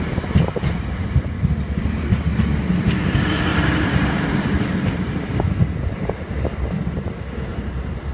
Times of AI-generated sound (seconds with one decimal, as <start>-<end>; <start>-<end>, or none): 3.5-4.9